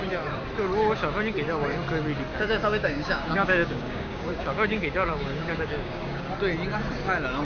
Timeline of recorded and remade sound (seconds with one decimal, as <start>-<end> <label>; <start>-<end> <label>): 0.0-2.3 recorded; 2.3-6.2 remade; 6.2-7.4 recorded